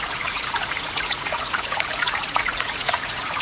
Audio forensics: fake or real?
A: fake